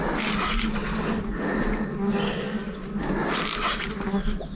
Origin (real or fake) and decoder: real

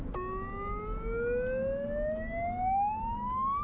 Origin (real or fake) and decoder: real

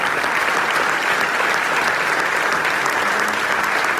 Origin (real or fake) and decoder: real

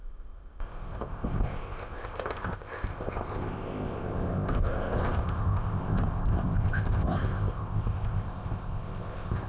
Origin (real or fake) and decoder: fake, codec, ZipCodec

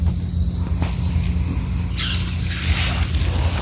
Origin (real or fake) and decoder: real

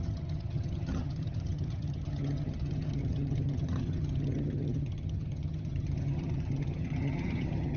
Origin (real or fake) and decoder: fake, vocoder, HiFi-GAN